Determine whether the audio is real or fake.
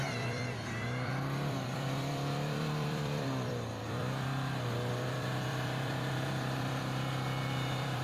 fake